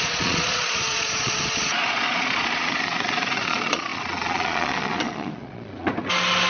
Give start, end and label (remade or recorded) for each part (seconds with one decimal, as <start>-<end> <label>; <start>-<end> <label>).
0.0-5.9 remade; 5.9-6.5 recorded